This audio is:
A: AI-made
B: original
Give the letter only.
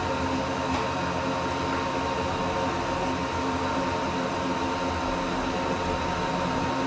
B